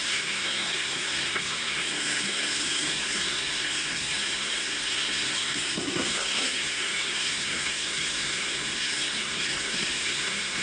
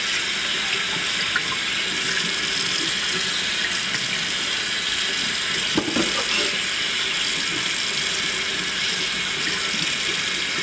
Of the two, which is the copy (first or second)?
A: first